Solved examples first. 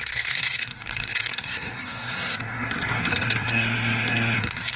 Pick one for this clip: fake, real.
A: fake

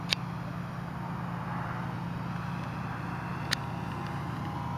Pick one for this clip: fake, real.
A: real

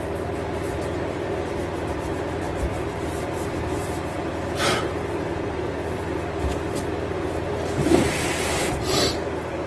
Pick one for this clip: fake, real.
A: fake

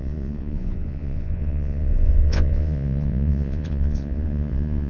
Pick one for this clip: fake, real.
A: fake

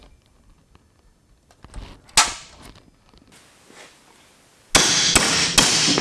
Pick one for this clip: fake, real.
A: real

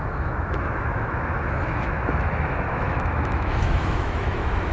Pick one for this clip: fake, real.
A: fake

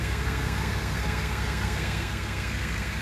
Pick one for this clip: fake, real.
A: fake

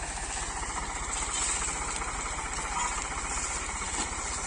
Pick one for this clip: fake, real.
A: real